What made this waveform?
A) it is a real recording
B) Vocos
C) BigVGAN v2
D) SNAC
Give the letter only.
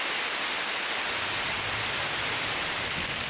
A